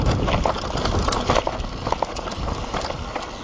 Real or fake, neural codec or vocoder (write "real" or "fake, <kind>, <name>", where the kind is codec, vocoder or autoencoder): real